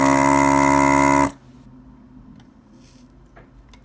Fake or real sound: real